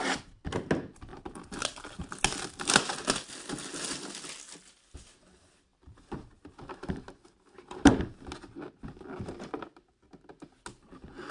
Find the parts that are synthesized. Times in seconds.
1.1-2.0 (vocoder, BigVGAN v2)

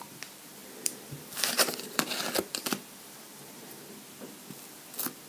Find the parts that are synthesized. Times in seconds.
0.6-3.8 (vocoder, BigVGAN v2)

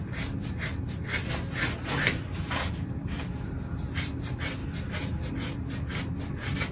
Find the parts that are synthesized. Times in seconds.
0.0-1.2 (vocoder, BigVGAN v2); 2.7-4.6; 5.3-6.7

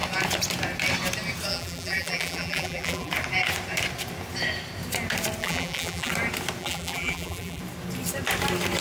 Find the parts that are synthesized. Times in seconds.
1.5-3.1 (vocoder, BigVGAN v2); 5.4-6.1; 6.6-7.6

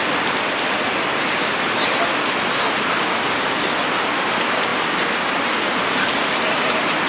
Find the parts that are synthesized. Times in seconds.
none